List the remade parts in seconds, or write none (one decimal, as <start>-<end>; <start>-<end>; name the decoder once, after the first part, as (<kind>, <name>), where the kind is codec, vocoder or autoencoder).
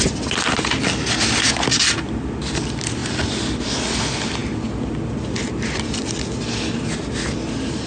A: none